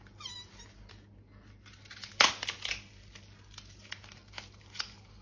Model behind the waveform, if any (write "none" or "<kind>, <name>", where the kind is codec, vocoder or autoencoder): none